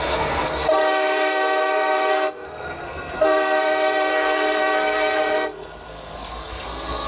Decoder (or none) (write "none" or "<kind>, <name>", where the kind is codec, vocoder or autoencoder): codec, SNAC